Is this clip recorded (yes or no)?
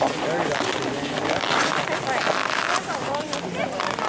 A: yes